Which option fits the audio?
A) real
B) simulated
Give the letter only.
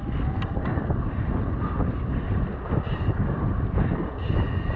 A